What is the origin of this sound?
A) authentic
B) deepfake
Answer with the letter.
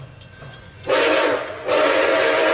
B